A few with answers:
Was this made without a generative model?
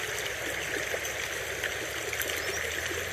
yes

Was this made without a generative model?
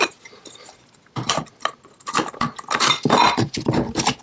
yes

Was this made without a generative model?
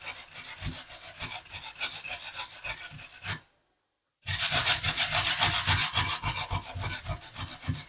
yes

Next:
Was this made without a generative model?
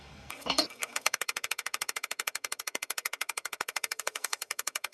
no